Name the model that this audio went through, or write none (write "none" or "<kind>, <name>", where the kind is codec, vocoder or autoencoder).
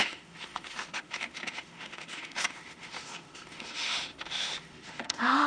autoencoder, DAC-VAE